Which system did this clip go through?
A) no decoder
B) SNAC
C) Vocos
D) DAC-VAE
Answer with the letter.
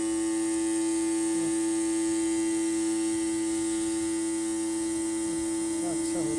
A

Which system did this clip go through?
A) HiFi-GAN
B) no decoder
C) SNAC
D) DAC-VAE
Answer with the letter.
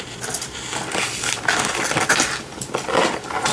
B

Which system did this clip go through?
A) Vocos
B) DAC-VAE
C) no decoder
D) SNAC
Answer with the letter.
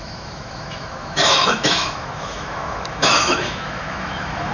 B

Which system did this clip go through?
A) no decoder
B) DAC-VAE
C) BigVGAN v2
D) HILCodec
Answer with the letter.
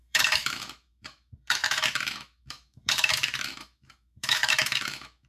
B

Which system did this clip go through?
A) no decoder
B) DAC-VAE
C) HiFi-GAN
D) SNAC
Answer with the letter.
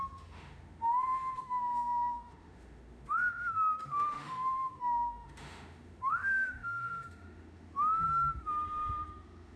B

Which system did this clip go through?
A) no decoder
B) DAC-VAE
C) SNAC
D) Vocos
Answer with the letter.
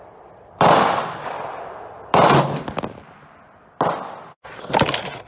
A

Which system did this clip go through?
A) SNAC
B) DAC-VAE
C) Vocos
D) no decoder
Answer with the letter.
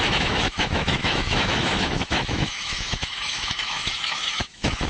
B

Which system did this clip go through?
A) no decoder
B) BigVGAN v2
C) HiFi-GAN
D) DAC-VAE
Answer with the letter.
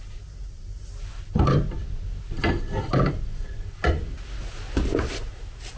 A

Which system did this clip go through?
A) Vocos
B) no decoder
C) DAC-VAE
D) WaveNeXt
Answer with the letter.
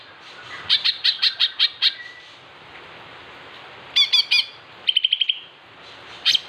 B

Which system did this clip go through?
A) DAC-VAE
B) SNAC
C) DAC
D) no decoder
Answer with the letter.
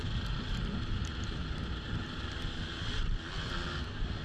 D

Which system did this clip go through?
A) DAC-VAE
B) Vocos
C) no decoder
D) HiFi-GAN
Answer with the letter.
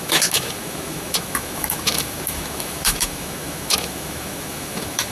A